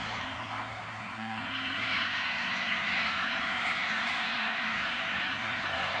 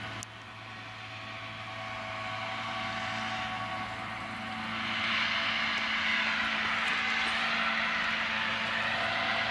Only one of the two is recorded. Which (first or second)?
second